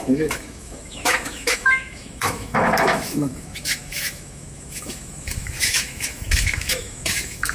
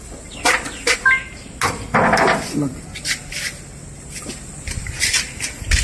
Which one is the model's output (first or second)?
first